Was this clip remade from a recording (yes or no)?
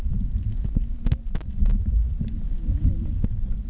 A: no